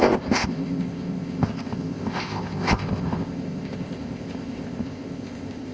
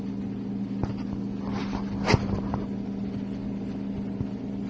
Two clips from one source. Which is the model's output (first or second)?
first